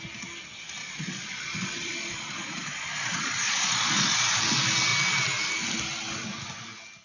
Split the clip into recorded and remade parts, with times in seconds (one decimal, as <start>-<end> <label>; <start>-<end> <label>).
0.0-0.8 recorded; 0.8-4.4 remade; 4.4-7.0 recorded